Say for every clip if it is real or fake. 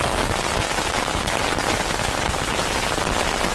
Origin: real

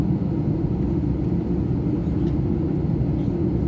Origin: real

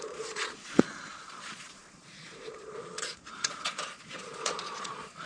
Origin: fake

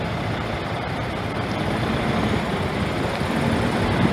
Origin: real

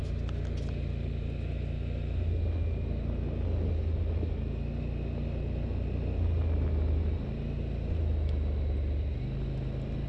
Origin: real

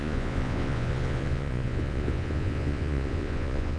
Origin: fake